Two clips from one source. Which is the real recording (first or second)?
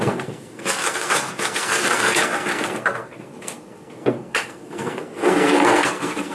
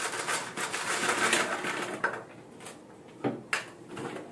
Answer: second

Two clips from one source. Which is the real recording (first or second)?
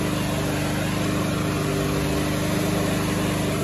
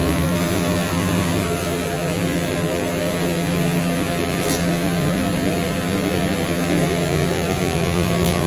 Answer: first